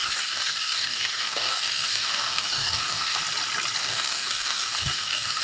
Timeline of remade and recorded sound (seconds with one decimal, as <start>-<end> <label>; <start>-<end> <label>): 0.0-3.2 remade; 3.2-3.8 recorded; 3.8-5.4 remade